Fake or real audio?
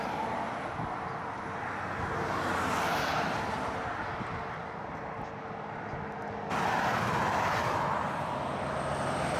real